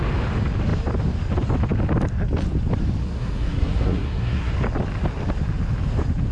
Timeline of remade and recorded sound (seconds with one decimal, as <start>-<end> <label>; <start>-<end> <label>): 0.0-3.0 recorded; 3.0-4.5 remade; 4.5-6.3 recorded